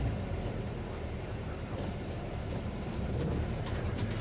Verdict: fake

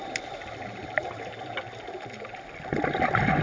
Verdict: real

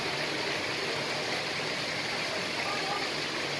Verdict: real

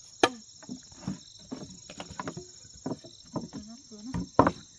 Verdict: real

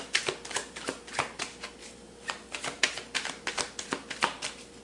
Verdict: real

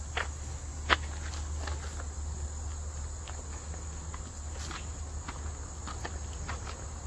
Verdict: real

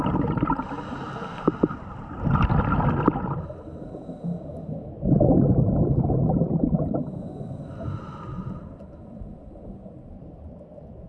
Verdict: real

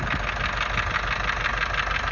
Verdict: real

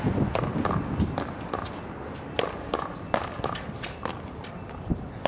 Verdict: real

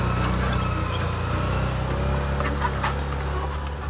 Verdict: real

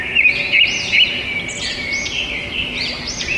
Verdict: real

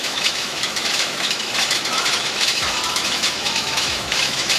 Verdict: fake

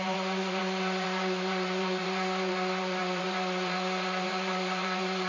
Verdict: fake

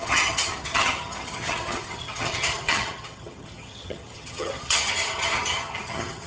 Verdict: fake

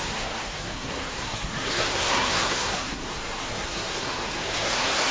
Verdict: fake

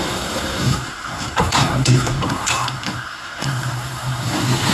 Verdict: fake